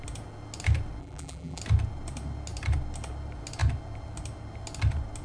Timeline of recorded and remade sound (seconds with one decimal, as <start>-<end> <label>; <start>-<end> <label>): 0.0-1.0 recorded; 1.0-1.6 remade; 1.6-5.2 recorded